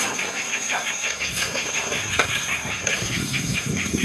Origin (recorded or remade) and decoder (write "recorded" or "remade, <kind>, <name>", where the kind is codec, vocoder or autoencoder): remade, codec, SNAC